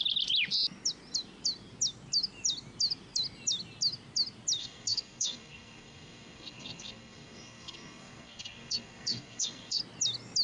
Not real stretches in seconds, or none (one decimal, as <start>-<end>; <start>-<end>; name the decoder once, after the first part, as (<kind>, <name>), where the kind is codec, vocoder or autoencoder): 4.6-9.8 (codec, SNAC)